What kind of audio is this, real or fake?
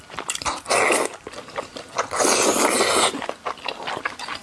real